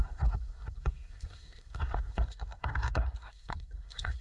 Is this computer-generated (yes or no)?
yes